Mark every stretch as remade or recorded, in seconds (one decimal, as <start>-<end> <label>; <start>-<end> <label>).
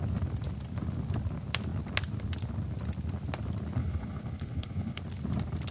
0.0-3.8 recorded; 3.8-5.0 remade; 5.0-5.7 recorded